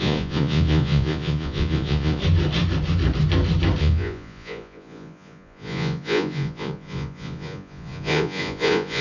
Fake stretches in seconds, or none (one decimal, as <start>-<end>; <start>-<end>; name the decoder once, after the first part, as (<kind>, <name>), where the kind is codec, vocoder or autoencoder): 0.0-2.2 (vocoder, Vocos); 3.8-9.0